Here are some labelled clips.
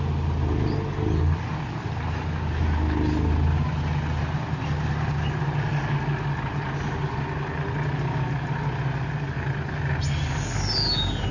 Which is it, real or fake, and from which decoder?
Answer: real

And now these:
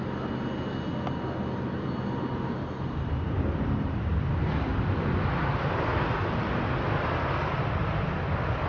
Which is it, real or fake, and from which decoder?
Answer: real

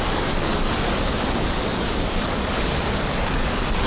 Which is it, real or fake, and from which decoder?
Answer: fake, codec, DAC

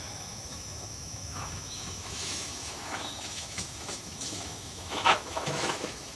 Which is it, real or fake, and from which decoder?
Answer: fake, autoencoder, DAC-VAE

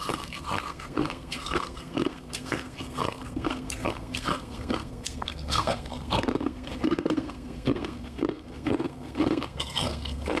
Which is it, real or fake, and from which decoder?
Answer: fake, codec, SNAC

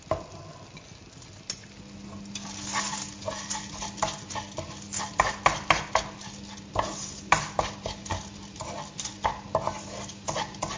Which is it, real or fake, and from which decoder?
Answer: real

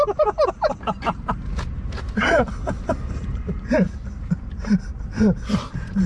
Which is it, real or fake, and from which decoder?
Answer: fake, vocoder, BigVGAN v2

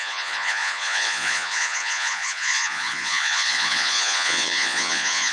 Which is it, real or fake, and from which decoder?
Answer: fake, vocoder, Vocos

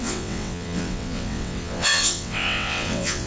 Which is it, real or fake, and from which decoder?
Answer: fake, vocoder, WaveNeXt